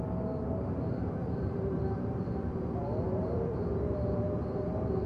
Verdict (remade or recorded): remade